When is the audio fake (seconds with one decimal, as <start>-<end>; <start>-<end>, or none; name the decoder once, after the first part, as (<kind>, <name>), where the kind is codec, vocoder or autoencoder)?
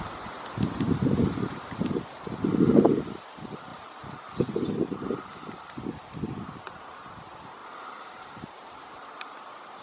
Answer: none